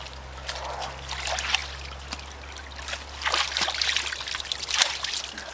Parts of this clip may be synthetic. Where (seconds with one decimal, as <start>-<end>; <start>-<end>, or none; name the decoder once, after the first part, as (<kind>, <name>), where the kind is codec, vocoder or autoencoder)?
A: none